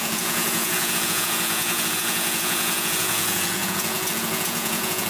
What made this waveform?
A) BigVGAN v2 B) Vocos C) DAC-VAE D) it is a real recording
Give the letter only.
B